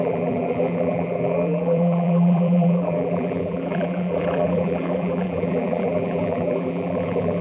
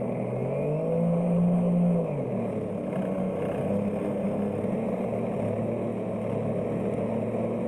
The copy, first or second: first